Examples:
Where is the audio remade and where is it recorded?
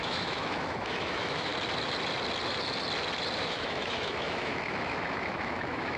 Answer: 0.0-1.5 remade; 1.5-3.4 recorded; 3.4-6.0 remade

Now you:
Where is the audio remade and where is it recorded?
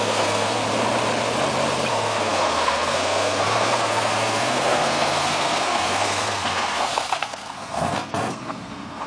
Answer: 0.0-0.6 remade; 0.6-1.9 recorded; 1.9-9.1 remade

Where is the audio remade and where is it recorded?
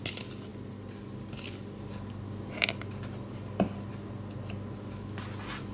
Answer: 0.0-5.7 recorded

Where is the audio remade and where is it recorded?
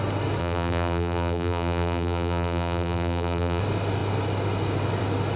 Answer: 0.0-0.4 recorded; 0.4-3.6 remade; 3.6-5.4 recorded